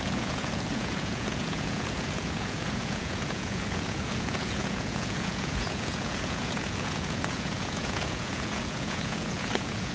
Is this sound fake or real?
fake